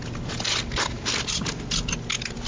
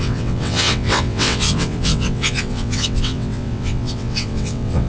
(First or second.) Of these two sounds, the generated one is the second